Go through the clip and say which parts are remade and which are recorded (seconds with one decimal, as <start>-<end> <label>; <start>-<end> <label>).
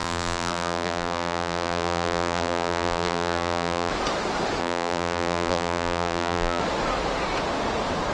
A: 0.0-3.9 remade; 3.9-4.6 recorded; 4.6-6.6 remade; 6.6-8.1 recorded